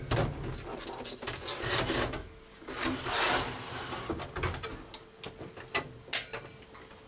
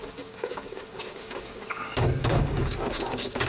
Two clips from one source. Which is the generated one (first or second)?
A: second